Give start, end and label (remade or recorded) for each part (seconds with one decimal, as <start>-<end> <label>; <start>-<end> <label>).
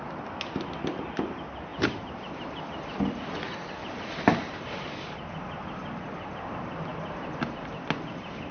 0.0-1.7 recorded; 1.7-3.2 remade; 3.2-6.9 recorded; 6.9-8.1 remade; 8.1-8.5 recorded